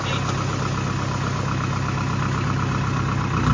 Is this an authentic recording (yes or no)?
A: yes